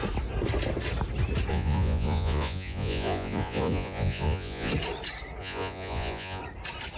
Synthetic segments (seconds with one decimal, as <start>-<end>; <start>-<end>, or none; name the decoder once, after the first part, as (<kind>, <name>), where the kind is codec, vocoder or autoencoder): 1.5-4.7 (vocoder, Vocos); 5.4-6.4